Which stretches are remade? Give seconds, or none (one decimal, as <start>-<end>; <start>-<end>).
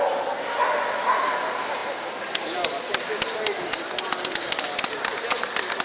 0.0-1.8; 3.4-5.8